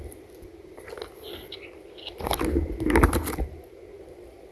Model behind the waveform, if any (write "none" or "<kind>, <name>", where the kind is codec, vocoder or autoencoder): none